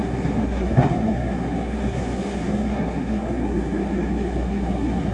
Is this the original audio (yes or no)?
no